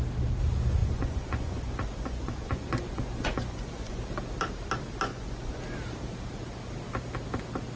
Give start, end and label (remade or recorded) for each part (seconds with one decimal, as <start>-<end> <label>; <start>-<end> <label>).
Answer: 0.0-0.8 recorded; 0.8-4.0 remade; 4.0-5.1 recorded; 5.1-5.6 remade; 5.6-7.8 recorded